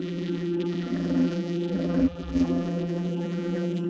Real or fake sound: fake